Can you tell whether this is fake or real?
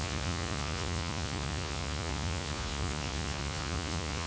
fake